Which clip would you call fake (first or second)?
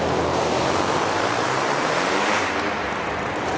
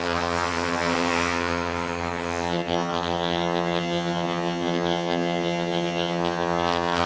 second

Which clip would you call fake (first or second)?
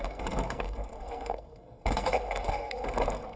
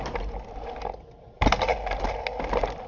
first